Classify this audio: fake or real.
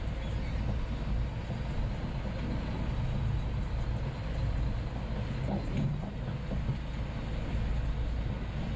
real